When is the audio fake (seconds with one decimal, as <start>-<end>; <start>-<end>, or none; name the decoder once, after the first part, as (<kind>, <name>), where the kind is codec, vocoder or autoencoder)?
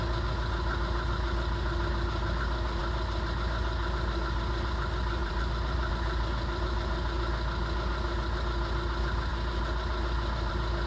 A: 5.2-5.9 (vocoder, BigVGAN v2)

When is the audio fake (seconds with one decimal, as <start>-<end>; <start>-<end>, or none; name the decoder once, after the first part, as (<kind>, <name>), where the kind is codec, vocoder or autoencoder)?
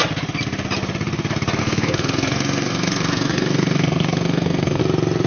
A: 1.6-4.8 (codec, SNAC)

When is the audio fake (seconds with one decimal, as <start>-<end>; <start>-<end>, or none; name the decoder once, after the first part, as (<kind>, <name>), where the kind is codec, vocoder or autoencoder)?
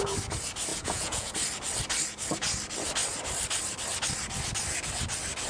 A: 0.7-1.3 (vocoder, Vocos)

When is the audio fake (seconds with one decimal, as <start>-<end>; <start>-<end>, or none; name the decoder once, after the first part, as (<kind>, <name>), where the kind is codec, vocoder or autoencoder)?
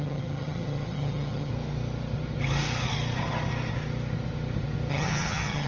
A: 0.0-1.5 (vocoder, HiFi-GAN); 4.9-5.7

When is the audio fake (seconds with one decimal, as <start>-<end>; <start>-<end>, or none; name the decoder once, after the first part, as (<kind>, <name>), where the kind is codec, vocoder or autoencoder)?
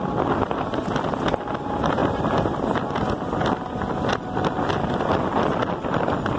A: none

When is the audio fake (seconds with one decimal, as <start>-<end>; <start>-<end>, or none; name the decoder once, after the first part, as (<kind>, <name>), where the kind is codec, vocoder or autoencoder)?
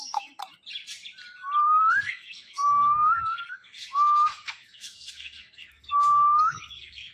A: 0.0-0.4 (codec, SNAC); 1.6-7.1